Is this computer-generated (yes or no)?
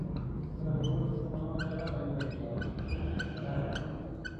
no